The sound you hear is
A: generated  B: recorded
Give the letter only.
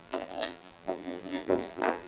A